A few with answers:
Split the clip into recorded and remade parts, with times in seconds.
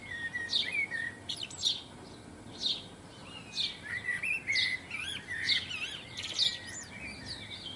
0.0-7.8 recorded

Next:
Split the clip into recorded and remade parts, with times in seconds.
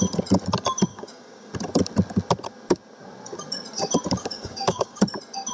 0.0-0.9 recorded; 0.9-1.5 remade; 1.5-4.2 recorded; 4.2-5.0 remade; 5.0-5.5 recorded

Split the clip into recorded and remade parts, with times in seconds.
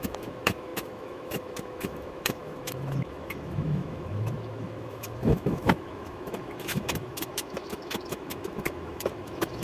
0.0-9.6 remade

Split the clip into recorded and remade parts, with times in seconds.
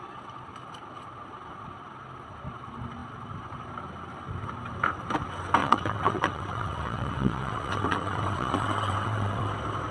0.0-5.6 recorded; 5.6-9.5 remade; 9.5-9.9 recorded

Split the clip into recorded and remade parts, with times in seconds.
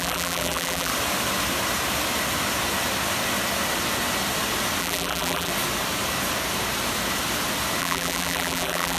0.0-0.9 remade; 0.9-4.8 recorded; 4.8-5.5 remade; 5.5-7.8 recorded; 7.8-9.0 remade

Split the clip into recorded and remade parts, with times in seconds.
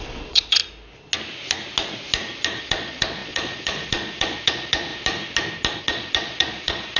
0.0-0.6 remade; 0.6-2.6 recorded; 2.6-4.9 remade; 4.9-5.8 recorded; 5.8-7.0 remade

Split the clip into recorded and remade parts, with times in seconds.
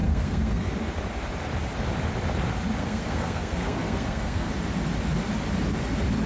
0.0-0.7 remade; 0.7-2.8 recorded; 2.8-4.5 remade; 4.5-6.3 recorded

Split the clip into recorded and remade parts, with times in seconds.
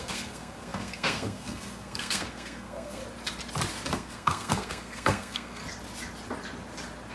0.0-3.0 remade; 3.0-3.9 recorded; 3.9-5.6 remade; 5.6-7.1 recorded